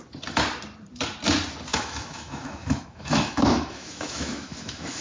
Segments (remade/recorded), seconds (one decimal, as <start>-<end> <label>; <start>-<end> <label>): 0.0-1.7 recorded; 1.7-5.0 remade